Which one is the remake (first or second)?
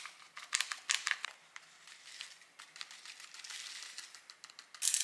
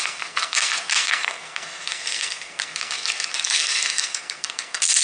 second